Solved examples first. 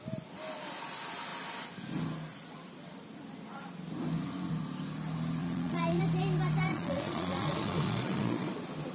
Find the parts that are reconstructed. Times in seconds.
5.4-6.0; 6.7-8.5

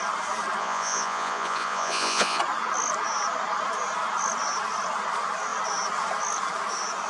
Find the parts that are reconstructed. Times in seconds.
0.6-2.4

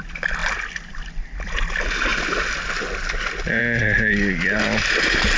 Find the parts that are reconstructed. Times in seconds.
none

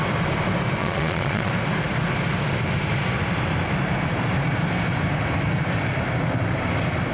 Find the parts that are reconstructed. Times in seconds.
0.8-1.5

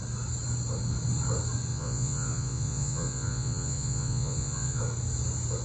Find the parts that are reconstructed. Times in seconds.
1.7-4.8

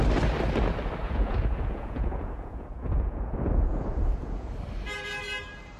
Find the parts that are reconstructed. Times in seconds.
1.0-4.5

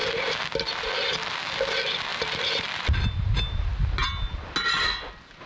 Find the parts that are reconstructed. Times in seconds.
none